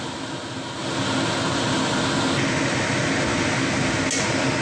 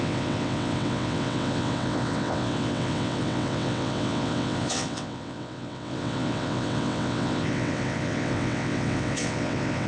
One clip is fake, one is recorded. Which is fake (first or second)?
second